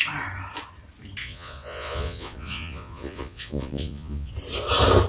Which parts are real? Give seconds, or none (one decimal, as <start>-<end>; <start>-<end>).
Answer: 0.0-1.2; 4.3-5.1